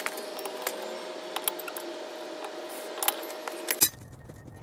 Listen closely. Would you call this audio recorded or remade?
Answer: recorded